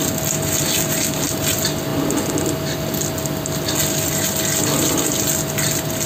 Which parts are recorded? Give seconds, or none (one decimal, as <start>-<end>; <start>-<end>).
0.0-6.1